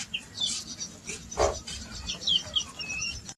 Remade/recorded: remade